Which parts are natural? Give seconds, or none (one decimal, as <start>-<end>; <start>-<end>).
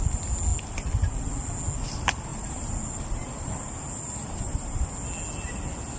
0.0-2.3; 4.9-6.0